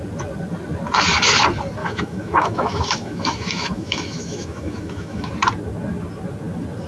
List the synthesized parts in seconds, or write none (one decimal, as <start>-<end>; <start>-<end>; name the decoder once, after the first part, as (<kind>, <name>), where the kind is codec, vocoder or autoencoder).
1.8-5.3 (autoencoder, DAC-VAE)